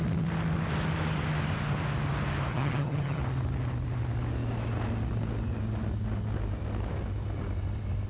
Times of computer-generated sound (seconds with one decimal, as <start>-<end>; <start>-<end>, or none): 2.5-3.2